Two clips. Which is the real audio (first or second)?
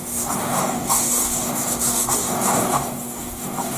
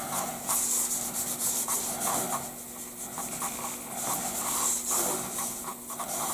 second